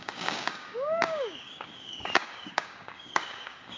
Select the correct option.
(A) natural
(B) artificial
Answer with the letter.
B